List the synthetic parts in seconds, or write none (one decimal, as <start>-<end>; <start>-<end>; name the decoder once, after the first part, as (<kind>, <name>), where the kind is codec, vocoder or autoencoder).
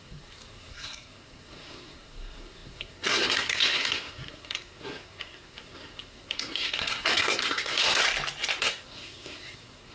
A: 0.0-8.0 (codec, SNAC); 8.6-9.9